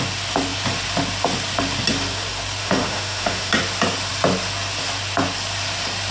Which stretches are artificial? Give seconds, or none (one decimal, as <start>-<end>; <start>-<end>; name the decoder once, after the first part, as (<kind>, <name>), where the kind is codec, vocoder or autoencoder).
2.6-3.5 (autoencoder, DAC-VAE)